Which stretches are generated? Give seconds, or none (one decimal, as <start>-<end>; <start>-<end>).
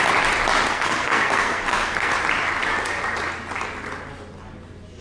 0.7-2.1